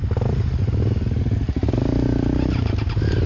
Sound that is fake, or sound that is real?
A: real